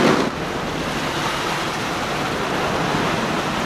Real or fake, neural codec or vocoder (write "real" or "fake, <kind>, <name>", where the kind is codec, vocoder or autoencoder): real